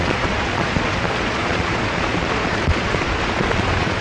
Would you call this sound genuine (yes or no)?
no